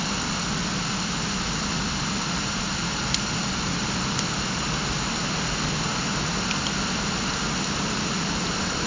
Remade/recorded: recorded